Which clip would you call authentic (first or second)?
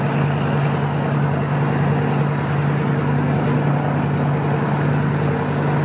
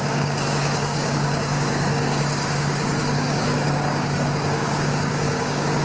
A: first